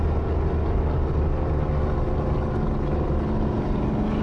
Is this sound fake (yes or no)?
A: no